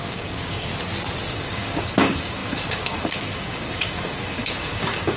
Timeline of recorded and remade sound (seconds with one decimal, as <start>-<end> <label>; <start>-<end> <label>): 0.0-0.7 remade; 0.7-1.3 recorded; 1.3-5.2 remade